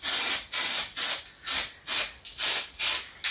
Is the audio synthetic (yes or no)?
no